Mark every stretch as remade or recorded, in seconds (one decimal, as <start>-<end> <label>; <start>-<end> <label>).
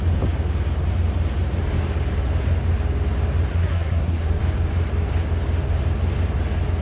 0.0-3.5 recorded; 3.5-4.4 remade; 4.4-6.8 recorded